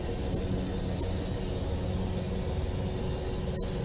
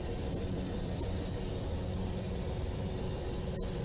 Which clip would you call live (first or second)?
first